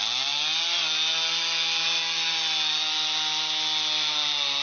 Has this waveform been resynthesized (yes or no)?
no